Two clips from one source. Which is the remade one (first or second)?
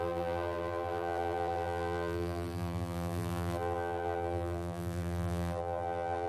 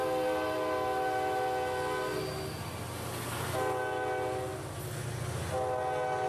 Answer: first